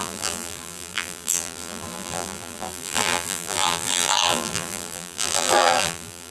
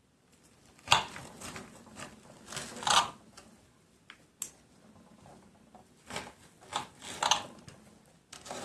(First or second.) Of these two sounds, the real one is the second